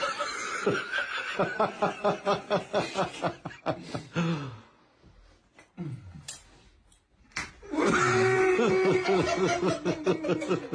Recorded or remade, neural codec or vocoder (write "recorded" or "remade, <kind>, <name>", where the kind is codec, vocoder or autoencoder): recorded